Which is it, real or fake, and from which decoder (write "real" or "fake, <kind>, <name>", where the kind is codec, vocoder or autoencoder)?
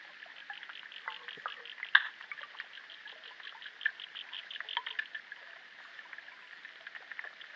real